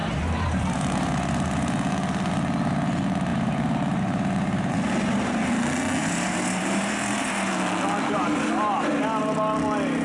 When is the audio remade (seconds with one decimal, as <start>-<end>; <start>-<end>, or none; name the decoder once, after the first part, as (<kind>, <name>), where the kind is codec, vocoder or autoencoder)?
0.0-1.9 (vocoder, BigVGAN v2); 3.3-4.7; 6.0-7.5